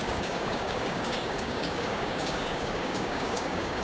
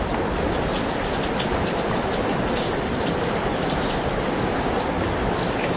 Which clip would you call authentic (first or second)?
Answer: second